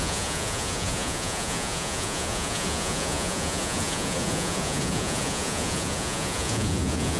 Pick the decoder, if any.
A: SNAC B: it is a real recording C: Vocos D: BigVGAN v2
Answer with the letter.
C